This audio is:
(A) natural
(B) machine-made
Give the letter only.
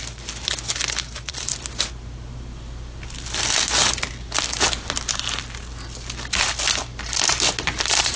A